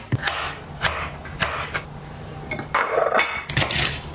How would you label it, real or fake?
real